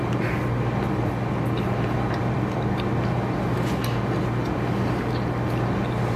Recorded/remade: recorded